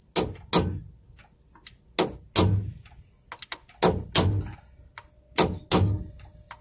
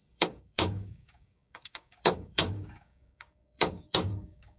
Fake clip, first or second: second